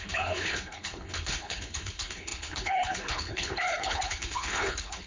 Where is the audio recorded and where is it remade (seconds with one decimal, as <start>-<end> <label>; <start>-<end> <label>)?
0.0-5.1 remade